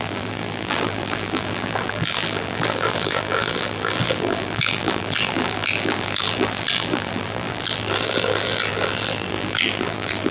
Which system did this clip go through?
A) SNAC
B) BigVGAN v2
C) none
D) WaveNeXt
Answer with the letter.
B